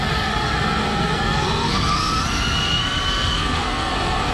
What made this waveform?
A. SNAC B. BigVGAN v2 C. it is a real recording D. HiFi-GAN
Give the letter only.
A